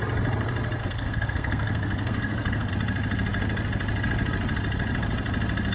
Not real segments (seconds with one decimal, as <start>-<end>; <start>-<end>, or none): 0.8-2.7